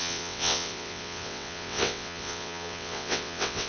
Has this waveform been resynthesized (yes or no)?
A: yes